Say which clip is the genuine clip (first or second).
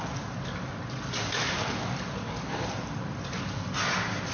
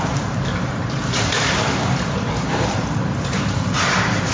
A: first